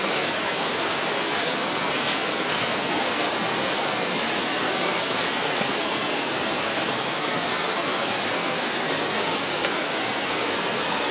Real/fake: fake